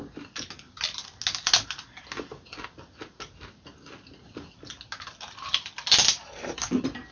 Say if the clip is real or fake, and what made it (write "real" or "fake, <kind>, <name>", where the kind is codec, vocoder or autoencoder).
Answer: real